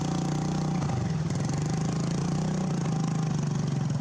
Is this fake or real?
real